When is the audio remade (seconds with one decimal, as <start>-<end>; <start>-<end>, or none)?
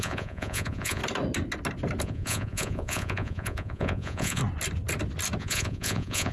0.0-1.0; 2.0-4.4; 5.4-6.3